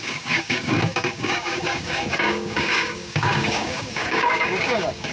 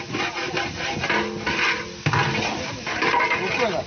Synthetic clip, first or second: first